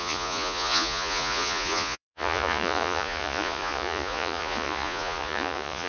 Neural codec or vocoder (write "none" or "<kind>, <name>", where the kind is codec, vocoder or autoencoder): vocoder, Vocos